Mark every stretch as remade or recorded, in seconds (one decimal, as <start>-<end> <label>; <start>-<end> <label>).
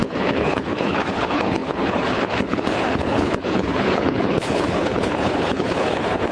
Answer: 0.0-6.3 remade